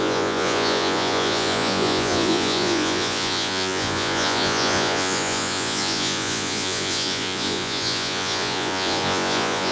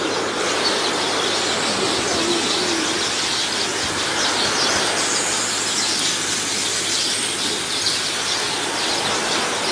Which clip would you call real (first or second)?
second